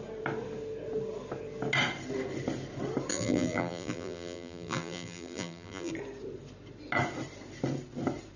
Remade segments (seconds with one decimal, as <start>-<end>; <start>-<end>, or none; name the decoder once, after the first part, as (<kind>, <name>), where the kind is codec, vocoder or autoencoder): 3.1-5.9 (vocoder, BigVGAN v2)